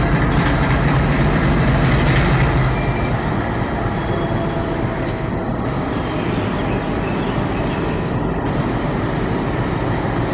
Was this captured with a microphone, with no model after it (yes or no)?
yes